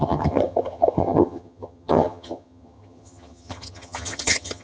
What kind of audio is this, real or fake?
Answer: fake